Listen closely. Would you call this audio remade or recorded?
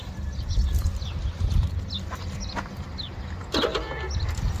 recorded